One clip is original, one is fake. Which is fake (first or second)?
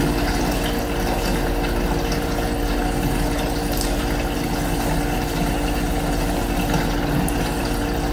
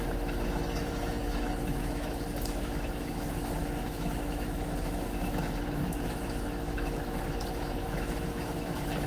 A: second